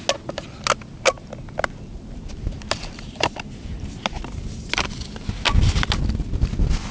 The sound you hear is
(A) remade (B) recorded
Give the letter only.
B